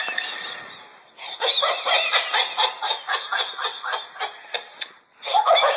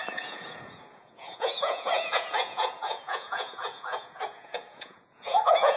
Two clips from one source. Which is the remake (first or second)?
second